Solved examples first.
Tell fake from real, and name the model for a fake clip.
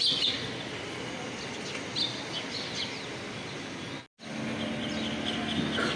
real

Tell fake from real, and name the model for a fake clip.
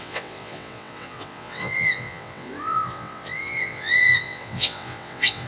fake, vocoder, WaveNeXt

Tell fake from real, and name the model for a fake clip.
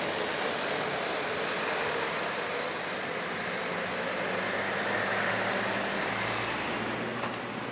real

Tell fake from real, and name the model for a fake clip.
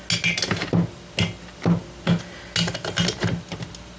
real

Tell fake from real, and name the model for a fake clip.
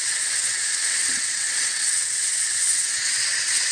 fake, vocoder, WaveNeXt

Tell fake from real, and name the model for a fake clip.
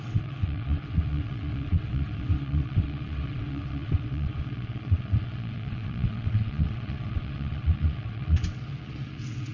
fake, vocoder, WaveNeXt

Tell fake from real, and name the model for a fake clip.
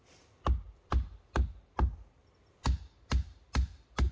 real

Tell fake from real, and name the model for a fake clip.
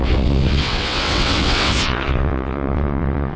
fake, vocoder, WaveNeXt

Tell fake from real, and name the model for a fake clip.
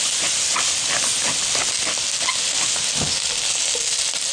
real